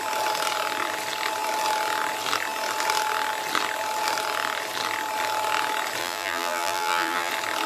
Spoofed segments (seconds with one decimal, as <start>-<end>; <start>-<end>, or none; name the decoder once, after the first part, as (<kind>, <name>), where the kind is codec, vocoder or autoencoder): 6.0-7.3 (vocoder, BigVGAN v2)

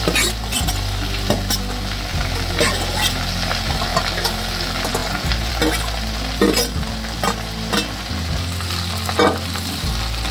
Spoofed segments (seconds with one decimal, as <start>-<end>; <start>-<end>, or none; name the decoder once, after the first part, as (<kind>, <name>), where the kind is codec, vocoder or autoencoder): none